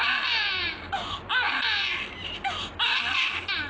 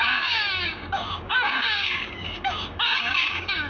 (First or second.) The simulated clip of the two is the second